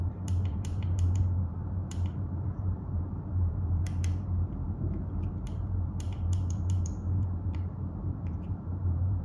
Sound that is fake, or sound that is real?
fake